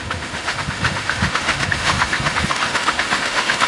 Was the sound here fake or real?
fake